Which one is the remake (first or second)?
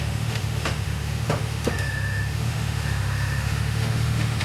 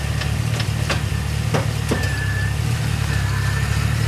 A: first